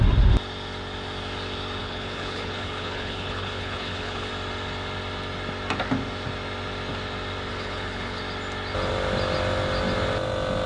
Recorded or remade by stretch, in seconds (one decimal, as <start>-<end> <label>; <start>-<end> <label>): 0.0-1.8 recorded; 1.8-4.3 remade; 4.3-7.5 recorded; 7.5-8.2 remade; 8.2-10.7 recorded